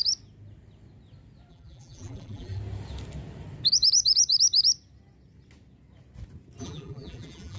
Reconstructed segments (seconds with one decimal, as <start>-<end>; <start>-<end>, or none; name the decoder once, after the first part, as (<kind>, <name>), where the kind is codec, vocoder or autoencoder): 1.5-2.6 (vocoder, BigVGAN v2); 6.6-7.6